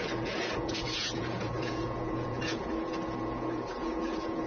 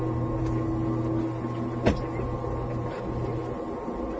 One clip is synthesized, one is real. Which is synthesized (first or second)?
first